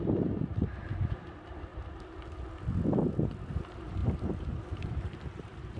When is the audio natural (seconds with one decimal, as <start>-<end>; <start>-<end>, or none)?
1.7-3.5